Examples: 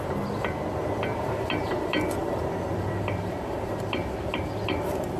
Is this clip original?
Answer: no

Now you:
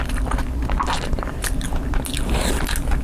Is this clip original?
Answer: yes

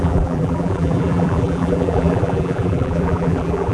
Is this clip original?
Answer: no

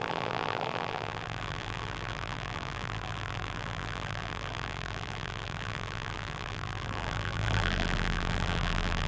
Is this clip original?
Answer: no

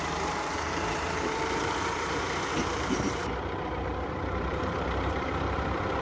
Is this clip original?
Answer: no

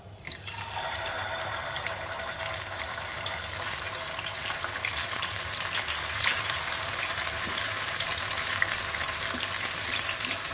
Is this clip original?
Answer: no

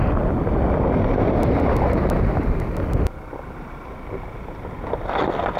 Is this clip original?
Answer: yes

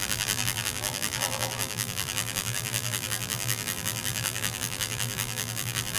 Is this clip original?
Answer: no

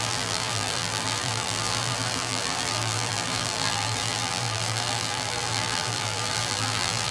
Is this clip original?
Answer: no